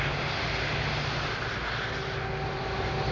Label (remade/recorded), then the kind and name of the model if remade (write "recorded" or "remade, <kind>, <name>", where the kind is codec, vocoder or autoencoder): recorded